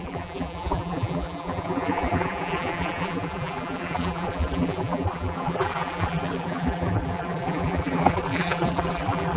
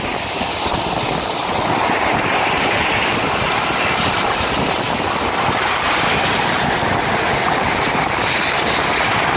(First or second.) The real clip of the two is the second